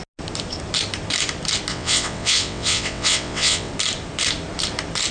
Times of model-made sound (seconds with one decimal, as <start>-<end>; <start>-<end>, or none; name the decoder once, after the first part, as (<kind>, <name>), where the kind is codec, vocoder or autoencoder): 1.7-3.7 (vocoder, WaveNeXt)